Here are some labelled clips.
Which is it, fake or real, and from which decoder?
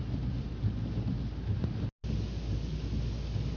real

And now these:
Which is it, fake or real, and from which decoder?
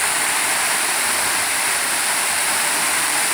fake, vocoder, BigVGAN v2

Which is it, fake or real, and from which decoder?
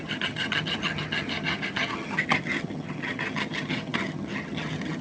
fake, vocoder, HiFi-GAN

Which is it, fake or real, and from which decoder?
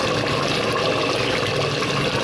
real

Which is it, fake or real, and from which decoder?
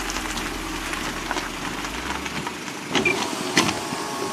real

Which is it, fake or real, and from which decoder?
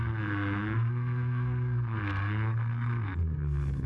fake, codec, SNAC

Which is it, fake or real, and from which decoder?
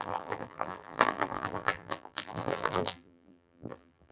fake, vocoder, BigVGAN v2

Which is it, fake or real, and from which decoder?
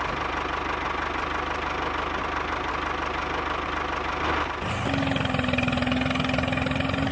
real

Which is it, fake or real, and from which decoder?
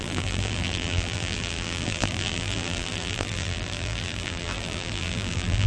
fake, vocoder, BigVGAN v2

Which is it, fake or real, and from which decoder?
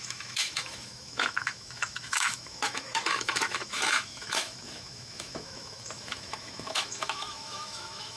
fake, autoencoder, DAC-VAE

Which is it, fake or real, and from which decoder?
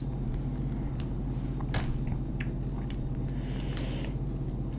real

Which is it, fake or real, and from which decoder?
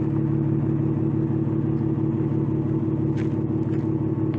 real